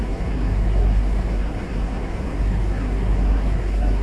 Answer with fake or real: fake